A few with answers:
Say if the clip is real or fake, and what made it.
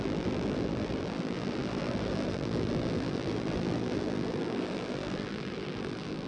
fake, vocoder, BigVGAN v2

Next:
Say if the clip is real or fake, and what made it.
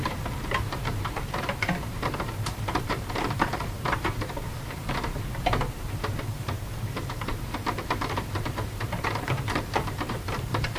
fake, vocoder, BigVGAN v2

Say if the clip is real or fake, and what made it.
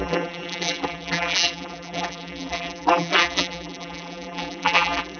fake, vocoder, BigVGAN v2